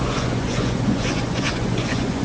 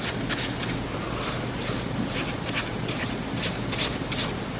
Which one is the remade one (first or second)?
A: first